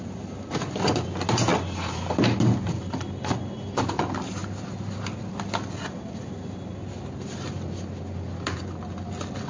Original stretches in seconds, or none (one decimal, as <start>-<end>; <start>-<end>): 0.0-9.5